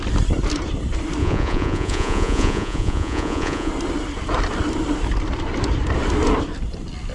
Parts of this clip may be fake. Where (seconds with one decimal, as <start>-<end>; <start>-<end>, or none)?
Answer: 1.2-3.7